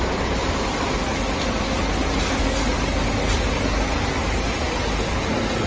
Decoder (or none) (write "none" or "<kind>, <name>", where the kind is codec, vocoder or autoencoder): none